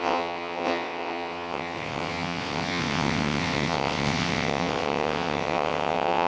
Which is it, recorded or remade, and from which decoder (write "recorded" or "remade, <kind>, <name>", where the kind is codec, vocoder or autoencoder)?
remade, vocoder, WaveNeXt